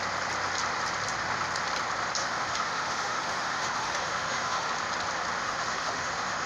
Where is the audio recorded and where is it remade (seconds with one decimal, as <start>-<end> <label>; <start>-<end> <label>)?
0.0-2.2 recorded; 2.2-4.7 remade; 4.7-5.4 recorded; 5.4-6.5 remade